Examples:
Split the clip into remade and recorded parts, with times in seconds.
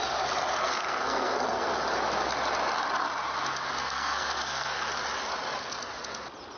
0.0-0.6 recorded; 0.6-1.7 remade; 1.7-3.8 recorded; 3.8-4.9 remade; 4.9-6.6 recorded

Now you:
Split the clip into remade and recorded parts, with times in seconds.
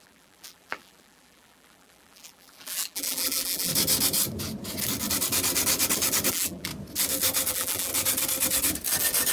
0.0-3.7 remade; 3.7-6.3 recorded; 6.3-6.7 remade; 6.7-7.5 recorded; 7.5-7.9 remade; 7.9-9.3 recorded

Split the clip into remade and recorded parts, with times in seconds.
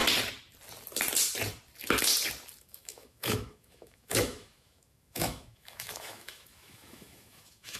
0.0-2.6 recorded; 2.6-7.8 remade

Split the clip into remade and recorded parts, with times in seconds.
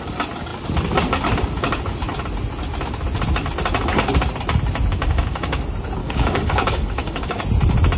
0.0-4.9 recorded; 4.9-5.6 remade; 5.6-6.0 recorded; 6.0-7.4 remade; 7.4-8.0 recorded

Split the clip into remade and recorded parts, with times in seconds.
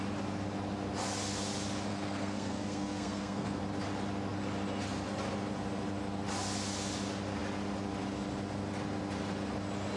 0.0-1.9 recorded; 1.9-3.6 remade; 3.6-10.0 recorded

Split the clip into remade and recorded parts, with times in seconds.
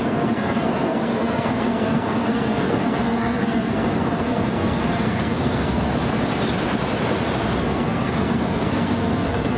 0.0-5.9 remade; 5.9-7.6 recorded; 7.6-9.6 remade